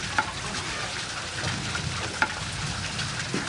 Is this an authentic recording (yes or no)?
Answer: yes